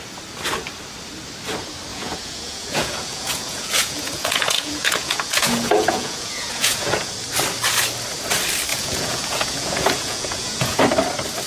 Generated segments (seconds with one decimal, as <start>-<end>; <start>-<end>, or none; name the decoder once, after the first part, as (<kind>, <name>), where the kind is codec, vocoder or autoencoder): 1.9-7.1 (vocoder, Vocos); 8.7-10.8